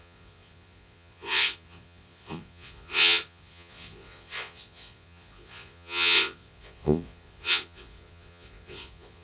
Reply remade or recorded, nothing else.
remade